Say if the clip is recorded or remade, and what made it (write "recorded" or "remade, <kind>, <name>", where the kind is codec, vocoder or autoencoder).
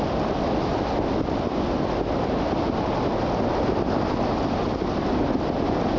recorded